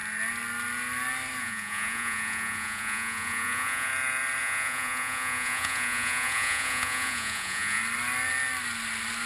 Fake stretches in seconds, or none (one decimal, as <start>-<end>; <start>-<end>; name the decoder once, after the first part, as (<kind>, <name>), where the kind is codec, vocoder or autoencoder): 1.4-3.9 (vocoder, Vocos); 4.4-7.8